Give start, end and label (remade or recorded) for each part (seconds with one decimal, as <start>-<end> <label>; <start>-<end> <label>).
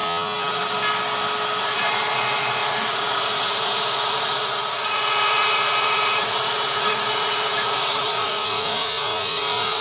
0.0-1.6 recorded; 1.6-9.8 remade